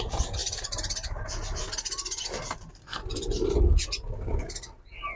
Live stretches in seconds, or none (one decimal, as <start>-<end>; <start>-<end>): 0.0-5.2

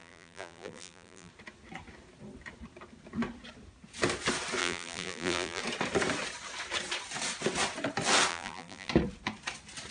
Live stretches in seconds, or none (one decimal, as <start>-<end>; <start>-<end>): 1.3-4.6; 5.6-8.3; 8.9-9.9

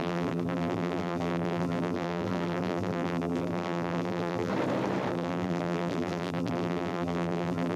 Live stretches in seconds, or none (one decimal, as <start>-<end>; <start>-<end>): 4.5-5.1

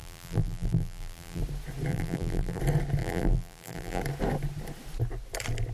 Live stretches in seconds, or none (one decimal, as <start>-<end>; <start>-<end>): 1.4-1.9; 2.6-3.0; 4.0-5.7

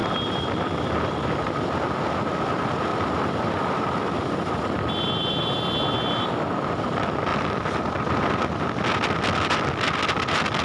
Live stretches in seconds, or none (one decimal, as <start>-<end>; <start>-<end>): 0.5-2.9; 5.3-7.3; 7.9-10.6

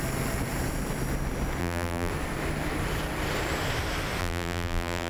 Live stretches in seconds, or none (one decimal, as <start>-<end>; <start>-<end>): 0.0-1.6; 2.1-4.2

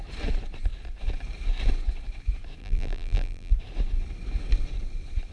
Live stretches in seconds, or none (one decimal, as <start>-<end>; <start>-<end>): 0.0-2.6; 3.5-5.3

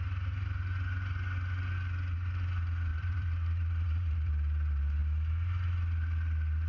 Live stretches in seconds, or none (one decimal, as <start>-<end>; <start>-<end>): 0.0-2.9; 4.3-6.7